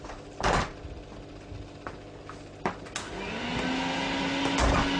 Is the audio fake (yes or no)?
no